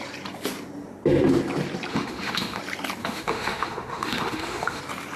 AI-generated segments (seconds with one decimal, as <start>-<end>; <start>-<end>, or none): 1.9-2.6; 3.0-4.8